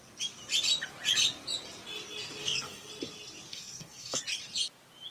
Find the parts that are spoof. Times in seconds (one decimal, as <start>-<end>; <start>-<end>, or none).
2.4-2.9; 3.5-4.2